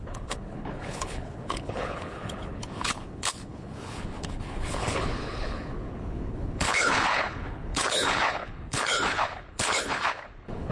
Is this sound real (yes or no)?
no